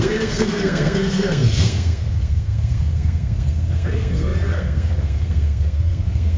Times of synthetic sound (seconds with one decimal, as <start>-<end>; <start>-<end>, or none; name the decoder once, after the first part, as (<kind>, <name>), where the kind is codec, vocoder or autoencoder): 0.0-6.4 (codec, SNAC)